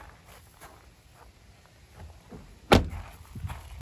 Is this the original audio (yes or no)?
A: yes